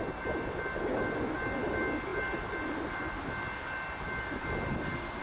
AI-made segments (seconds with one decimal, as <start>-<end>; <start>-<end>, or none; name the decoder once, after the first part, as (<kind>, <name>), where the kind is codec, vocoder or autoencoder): none